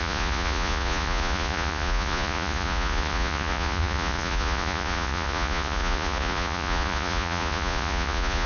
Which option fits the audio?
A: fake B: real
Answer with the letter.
A